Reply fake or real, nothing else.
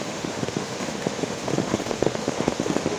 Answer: fake